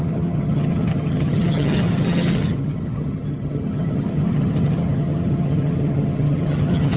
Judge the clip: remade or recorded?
remade